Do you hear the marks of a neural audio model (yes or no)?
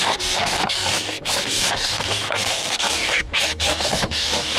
yes